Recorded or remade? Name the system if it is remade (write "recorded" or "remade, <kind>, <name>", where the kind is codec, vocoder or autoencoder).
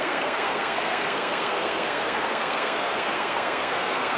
remade, codec, SNAC